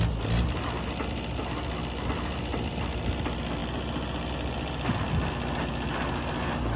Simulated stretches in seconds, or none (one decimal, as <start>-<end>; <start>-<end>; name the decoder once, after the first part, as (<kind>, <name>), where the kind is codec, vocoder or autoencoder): none